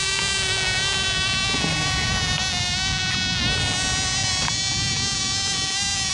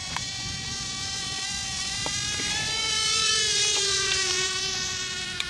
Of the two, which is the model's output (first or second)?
second